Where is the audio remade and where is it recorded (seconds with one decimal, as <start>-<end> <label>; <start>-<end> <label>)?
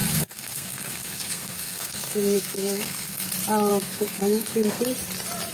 0.0-3.3 remade; 3.3-3.7 recorded; 3.7-4.8 remade; 4.8-5.5 recorded